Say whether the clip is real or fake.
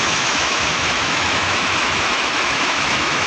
fake